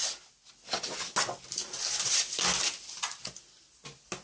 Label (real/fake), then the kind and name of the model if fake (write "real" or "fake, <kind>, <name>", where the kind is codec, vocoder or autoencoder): real